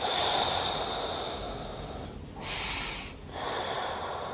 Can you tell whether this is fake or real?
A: real